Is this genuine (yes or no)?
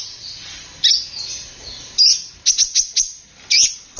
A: yes